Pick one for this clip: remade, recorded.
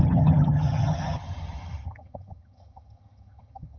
remade